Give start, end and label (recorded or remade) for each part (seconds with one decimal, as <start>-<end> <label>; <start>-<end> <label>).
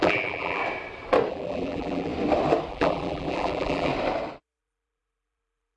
0.0-0.6 remade; 0.6-1.3 recorded; 1.3-2.1 remade; 2.1-2.7 recorded; 2.7-3.9 remade; 3.9-4.6 recorded; 4.6-5.8 remade